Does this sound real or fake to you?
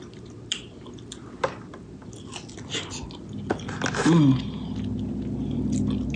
real